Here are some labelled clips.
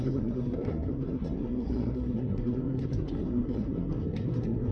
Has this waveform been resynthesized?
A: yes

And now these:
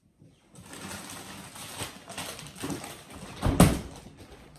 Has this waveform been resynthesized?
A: no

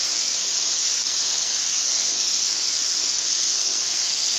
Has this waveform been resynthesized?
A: yes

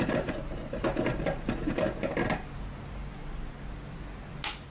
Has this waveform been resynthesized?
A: no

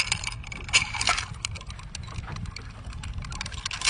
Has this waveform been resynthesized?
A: no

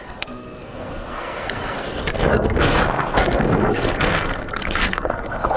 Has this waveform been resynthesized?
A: yes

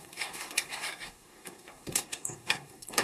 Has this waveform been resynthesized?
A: yes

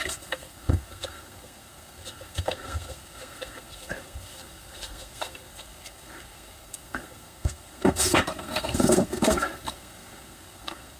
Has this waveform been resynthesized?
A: yes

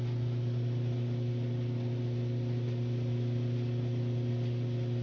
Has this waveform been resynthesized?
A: no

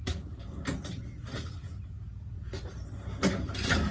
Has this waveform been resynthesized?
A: no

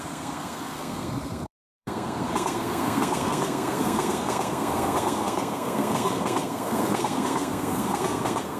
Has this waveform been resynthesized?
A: yes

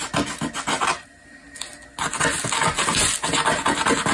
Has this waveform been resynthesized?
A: no